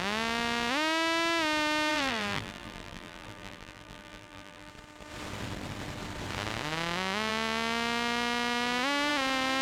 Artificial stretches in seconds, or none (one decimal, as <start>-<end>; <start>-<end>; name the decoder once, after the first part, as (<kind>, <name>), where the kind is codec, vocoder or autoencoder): 1.9-4.7 (vocoder, BigVGAN v2)